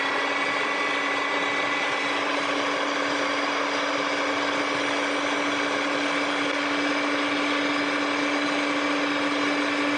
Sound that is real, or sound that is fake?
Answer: real